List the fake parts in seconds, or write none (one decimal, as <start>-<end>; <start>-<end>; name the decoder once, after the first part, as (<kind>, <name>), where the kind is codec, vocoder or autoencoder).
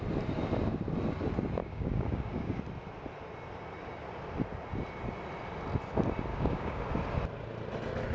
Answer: 1.6-2.6 (codec, DAC); 6.3-6.8